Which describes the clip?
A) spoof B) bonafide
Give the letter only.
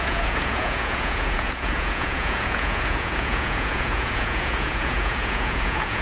A